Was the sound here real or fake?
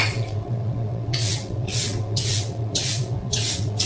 fake